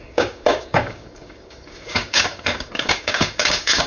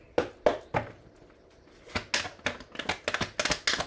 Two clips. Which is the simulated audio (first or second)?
first